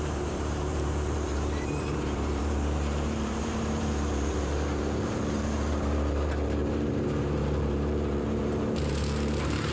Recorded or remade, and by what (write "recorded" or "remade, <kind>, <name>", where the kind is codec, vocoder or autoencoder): remade, vocoder, BigVGAN v2